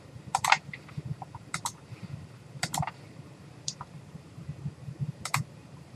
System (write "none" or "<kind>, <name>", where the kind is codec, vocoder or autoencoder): vocoder, BigVGAN v2